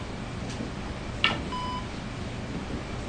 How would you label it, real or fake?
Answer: real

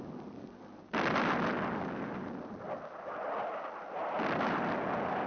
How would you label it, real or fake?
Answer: real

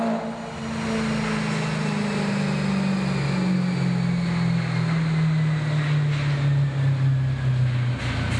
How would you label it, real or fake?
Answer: real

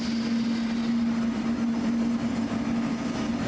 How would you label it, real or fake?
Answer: real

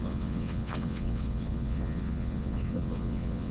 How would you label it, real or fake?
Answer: fake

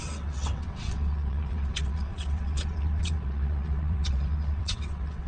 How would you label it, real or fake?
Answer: fake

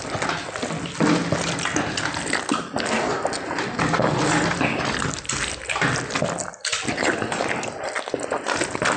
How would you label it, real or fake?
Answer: real